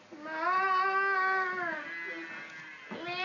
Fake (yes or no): no